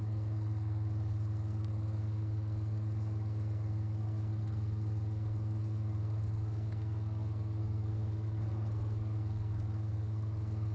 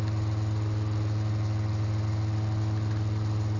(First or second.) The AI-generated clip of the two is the first